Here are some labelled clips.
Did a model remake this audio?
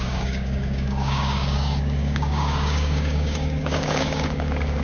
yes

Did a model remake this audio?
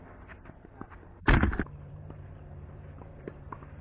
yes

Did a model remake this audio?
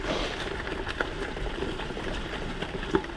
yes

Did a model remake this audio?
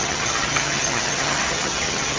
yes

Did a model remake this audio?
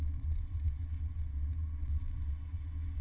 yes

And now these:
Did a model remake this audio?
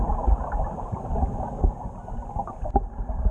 no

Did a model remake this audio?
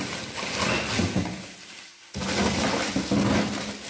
no